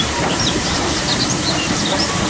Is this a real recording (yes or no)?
no